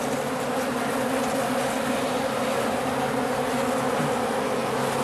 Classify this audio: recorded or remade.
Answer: recorded